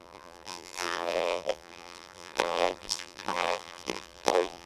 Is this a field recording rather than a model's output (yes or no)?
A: no